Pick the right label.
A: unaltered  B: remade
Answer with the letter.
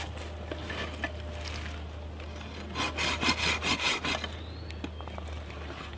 A